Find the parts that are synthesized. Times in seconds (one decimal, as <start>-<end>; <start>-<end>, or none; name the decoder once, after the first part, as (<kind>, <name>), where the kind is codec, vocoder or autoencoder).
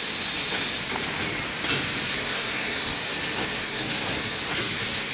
2.1-2.9 (codec, SNAC); 3.4-5.1